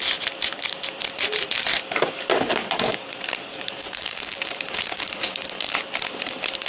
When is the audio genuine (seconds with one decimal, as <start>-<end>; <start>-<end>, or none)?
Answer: 0.0-2.3; 3.1-3.5; 5.7-6.7